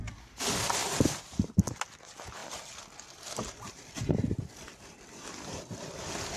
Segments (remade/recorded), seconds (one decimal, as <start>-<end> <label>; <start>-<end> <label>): 0.0-0.8 recorded; 0.8-1.5 remade; 1.5-2.4 recorded; 2.4-6.4 remade